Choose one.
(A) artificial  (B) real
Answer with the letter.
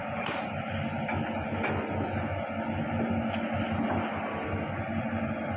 B